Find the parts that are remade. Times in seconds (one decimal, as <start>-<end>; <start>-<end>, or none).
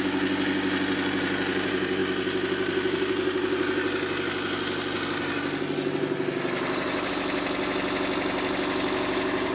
none